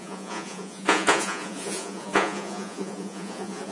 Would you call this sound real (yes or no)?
no